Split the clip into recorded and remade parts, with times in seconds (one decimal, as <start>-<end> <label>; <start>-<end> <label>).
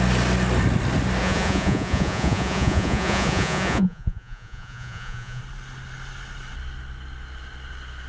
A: 0.0-1.2 recorded; 1.2-5.4 remade; 5.4-8.1 recorded